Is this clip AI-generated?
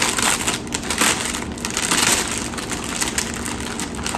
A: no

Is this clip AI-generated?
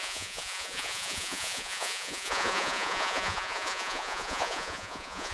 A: yes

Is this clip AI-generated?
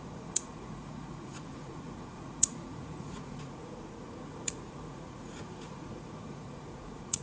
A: yes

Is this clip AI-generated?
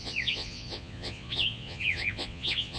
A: yes